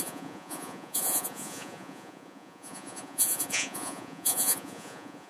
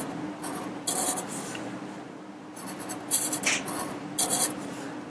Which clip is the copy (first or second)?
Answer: first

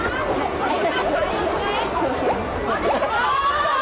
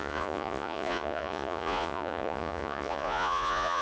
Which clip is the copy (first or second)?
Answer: second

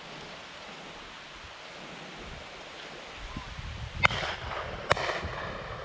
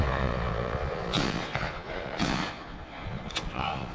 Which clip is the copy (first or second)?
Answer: second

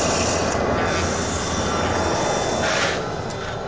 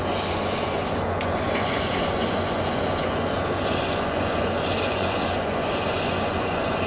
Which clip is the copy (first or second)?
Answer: second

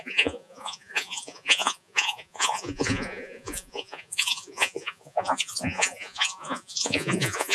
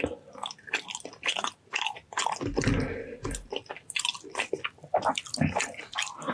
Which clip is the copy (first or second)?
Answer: first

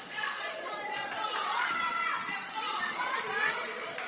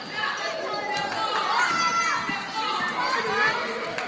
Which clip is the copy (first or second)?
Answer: first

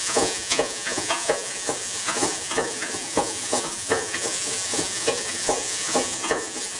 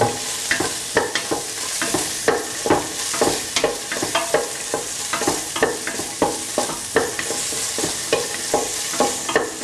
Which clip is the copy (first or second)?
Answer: first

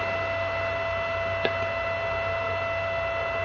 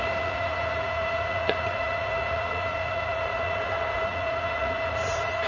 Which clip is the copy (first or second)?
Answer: second